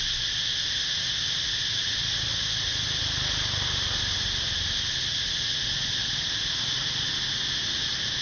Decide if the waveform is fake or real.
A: real